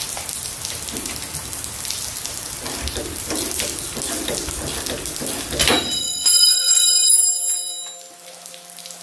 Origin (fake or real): real